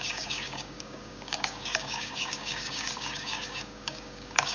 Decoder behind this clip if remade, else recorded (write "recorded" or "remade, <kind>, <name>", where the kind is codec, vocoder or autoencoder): remade, codec, DAC